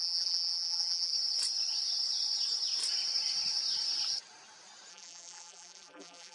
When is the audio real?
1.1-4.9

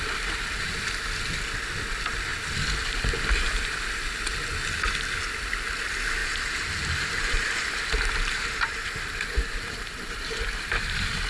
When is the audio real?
0.0-6.2; 10.8-11.3

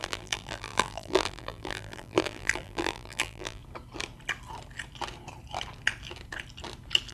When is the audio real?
3.6-7.1